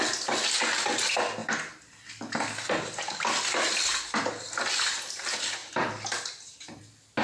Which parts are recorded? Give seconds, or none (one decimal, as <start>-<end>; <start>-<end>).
0.0-7.2